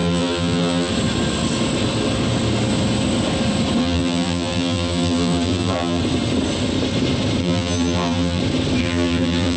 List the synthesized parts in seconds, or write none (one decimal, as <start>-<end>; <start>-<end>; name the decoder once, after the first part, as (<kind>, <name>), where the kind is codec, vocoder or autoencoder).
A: 0.0-0.9 (vocoder, BigVGAN v2); 3.8-6.0; 7.4-8.4; 8.8-9.6